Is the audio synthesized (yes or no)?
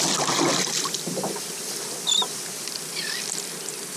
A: yes